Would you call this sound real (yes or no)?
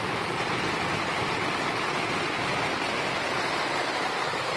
yes